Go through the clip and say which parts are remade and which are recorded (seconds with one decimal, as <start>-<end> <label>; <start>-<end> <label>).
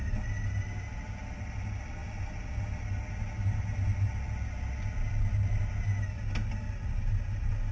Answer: 0.0-7.7 recorded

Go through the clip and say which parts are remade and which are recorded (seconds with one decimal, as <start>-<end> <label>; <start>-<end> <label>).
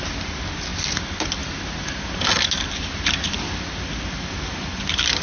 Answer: 0.0-5.2 recorded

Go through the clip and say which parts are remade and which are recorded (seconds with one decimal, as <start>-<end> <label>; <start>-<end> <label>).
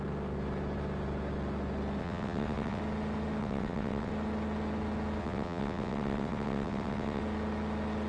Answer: 0.0-2.0 recorded; 2.0-2.8 remade; 2.8-3.4 recorded; 3.4-4.1 remade; 4.1-5.2 recorded; 5.2-7.2 remade; 7.2-8.1 recorded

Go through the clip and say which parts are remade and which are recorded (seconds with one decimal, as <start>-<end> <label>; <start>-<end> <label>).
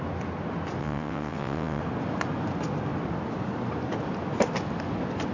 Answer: 0.0-0.8 recorded; 0.8-1.8 remade; 1.8-5.3 recorded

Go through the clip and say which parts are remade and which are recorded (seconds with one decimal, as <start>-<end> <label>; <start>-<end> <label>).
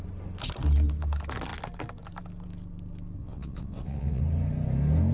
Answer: 0.0-3.2 recorded; 3.2-4.2 remade; 4.2-5.1 recorded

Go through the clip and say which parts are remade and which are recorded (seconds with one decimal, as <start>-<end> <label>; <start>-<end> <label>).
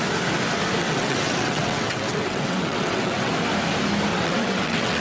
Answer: 0.0-0.8 recorded; 0.8-3.3 remade; 3.3-4.1 recorded; 4.1-5.0 remade